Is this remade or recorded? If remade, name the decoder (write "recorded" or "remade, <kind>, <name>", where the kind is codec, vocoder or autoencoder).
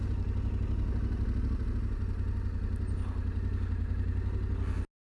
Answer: recorded